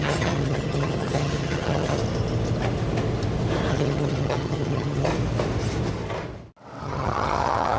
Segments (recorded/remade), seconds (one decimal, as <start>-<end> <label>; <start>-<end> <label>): 0.0-2.0 remade; 2.0-3.7 recorded; 3.7-5.1 remade; 5.1-6.8 recorded; 6.8-7.8 remade